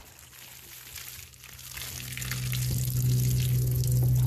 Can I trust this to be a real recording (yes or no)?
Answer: yes